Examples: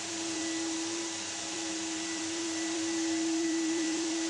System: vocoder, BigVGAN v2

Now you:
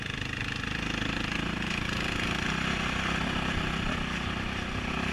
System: none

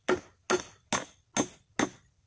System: none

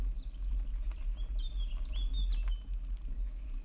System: none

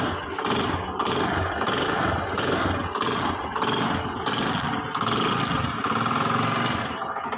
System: none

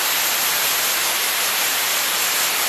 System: none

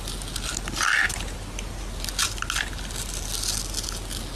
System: none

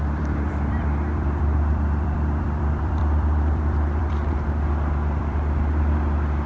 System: vocoder, BigVGAN v2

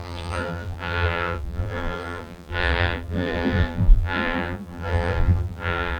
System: vocoder, BigVGAN v2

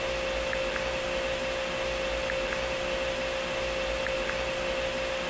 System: none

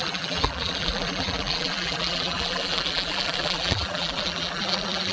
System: vocoder, BigVGAN v2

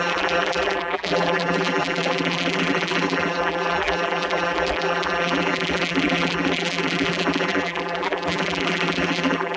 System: vocoder, BigVGAN v2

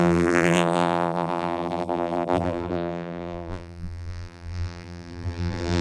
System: vocoder, BigVGAN v2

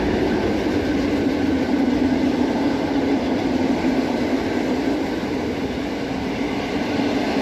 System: none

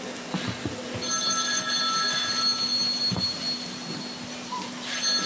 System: none